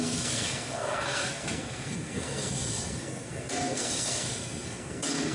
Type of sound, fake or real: fake